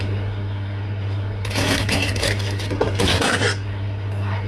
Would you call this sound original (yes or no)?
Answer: no